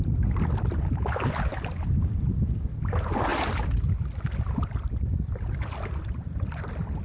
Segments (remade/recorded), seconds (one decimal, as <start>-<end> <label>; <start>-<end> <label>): 0.0-3.3 recorded; 3.3-7.0 remade